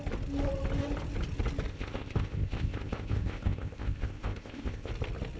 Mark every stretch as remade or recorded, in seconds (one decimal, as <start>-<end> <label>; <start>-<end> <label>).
0.0-1.7 recorded; 1.7-4.9 remade; 4.9-5.4 recorded